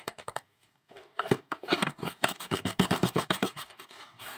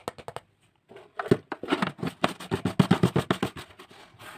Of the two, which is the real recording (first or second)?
second